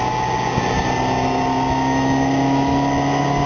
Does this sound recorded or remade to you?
recorded